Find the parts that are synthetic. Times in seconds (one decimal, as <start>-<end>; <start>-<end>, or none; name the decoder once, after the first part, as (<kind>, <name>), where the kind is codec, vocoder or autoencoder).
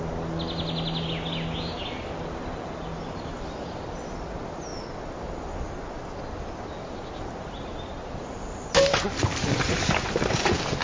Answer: none